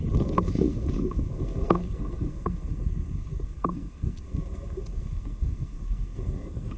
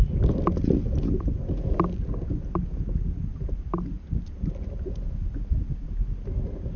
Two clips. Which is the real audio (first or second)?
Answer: second